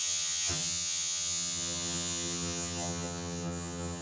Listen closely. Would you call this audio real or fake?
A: fake